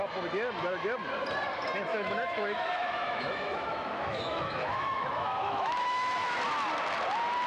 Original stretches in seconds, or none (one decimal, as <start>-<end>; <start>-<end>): 0.0-1.9; 6.4-7.5